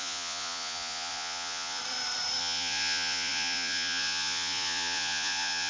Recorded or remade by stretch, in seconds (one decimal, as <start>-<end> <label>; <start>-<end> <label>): 0.0-1.8 remade; 1.8-2.4 recorded; 2.4-5.7 remade